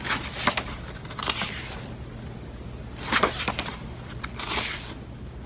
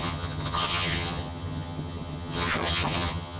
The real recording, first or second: first